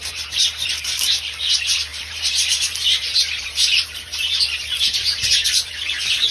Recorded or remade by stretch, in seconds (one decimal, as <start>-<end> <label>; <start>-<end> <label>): 0.0-6.3 remade